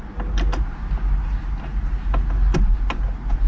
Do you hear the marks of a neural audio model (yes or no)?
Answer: no